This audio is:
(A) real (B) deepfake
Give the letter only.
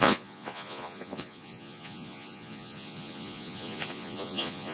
B